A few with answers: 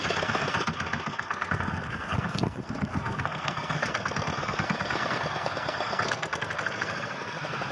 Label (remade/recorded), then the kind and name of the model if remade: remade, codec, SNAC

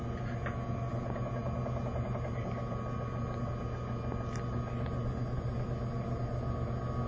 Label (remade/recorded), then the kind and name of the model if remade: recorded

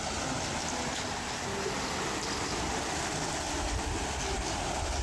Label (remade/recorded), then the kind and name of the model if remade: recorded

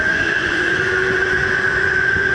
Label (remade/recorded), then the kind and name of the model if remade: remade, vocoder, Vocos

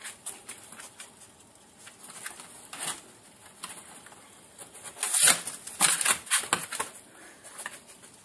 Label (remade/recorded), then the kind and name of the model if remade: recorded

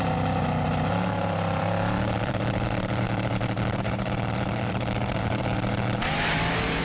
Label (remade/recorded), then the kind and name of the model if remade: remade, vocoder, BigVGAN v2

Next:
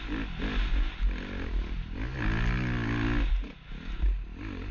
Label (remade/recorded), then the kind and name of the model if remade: recorded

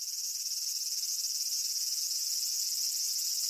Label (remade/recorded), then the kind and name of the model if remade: recorded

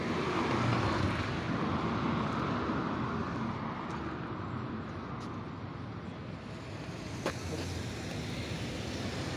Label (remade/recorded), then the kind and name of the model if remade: recorded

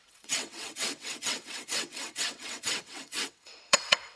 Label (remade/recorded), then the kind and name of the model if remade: remade, vocoder, WaveNeXt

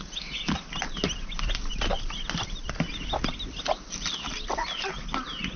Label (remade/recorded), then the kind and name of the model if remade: recorded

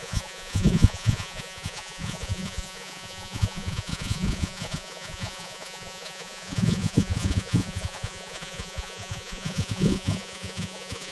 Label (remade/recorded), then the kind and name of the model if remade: remade, vocoder, Vocos